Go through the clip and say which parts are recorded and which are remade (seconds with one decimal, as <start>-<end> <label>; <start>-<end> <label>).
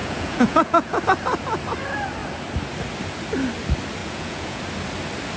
0.0-1.0 remade; 1.0-4.0 recorded; 4.0-4.6 remade; 4.6-5.4 recorded